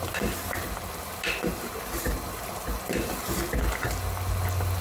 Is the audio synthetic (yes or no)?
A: no